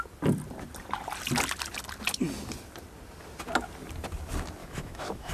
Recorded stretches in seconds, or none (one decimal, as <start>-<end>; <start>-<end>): 0.0-4.6